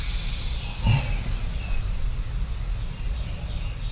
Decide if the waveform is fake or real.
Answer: real